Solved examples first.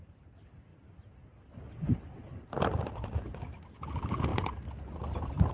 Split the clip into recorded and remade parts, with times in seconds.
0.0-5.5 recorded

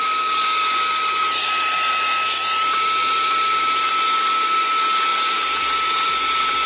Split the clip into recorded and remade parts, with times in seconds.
0.0-1.2 recorded; 1.2-1.9 remade; 1.9-3.0 recorded; 3.0-3.9 remade; 3.9-5.1 recorded; 5.1-6.2 remade; 6.2-6.7 recorded